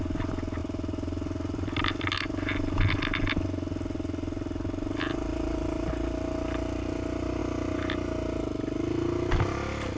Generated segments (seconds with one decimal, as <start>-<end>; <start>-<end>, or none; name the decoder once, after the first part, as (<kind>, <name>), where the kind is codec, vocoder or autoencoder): 5.3-5.9 (vocoder, BigVGAN v2)